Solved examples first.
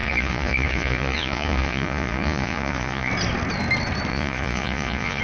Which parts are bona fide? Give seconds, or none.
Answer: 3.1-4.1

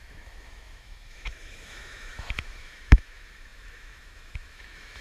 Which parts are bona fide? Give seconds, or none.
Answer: none

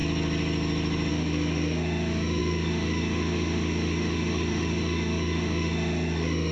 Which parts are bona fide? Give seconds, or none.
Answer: 0.0-1.1